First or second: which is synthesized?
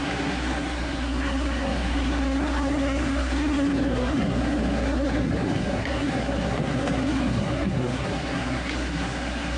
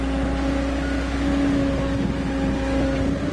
first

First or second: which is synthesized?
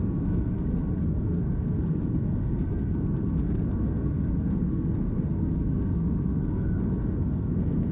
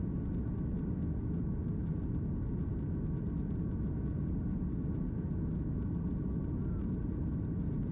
first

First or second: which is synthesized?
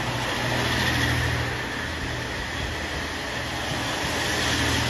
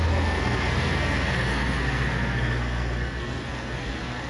second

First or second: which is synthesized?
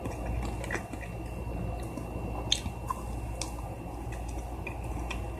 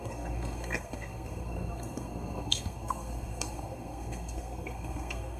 second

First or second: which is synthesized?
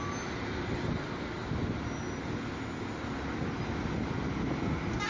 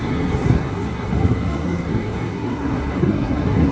second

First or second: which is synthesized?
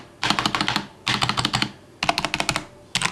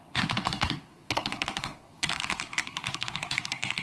second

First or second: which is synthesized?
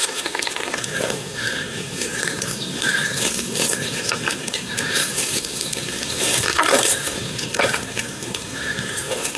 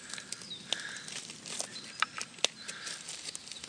first